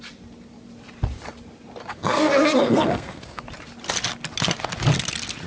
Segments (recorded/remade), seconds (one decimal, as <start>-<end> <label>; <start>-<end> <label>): 0.0-1.9 recorded; 1.9-3.4 remade; 3.4-5.5 recorded